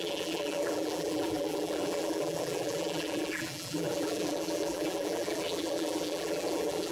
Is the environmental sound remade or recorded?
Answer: remade